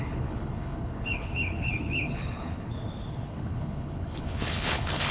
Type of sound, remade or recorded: remade